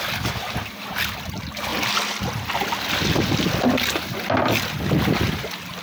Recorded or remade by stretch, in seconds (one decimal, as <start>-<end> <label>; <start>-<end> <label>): 0.0-5.8 recorded